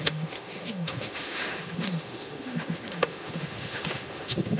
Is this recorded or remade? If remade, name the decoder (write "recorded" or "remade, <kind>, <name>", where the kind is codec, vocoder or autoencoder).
remade, autoencoder, DAC-VAE